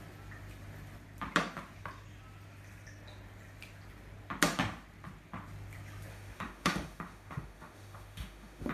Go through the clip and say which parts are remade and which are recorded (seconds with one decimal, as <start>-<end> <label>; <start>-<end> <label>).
0.0-6.1 recorded; 6.1-8.7 remade